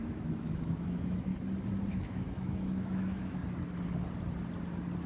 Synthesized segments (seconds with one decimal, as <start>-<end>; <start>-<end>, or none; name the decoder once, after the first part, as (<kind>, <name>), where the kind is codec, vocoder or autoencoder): 0.0-1.3 (autoencoder, DAC-VAE); 1.9-3.4